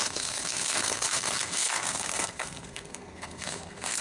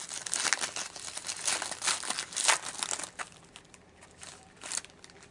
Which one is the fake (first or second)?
first